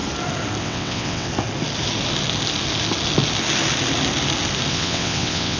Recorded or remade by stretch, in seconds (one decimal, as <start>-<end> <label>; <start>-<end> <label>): 0.0-0.6 recorded; 0.6-1.3 remade; 1.3-4.7 recorded; 4.7-5.6 remade